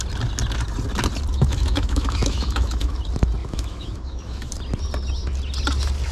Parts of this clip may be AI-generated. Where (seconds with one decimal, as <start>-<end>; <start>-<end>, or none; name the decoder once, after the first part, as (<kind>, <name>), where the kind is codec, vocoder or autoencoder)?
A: 1.3-3.0 (autoencoder, DAC-VAE); 3.4-4.5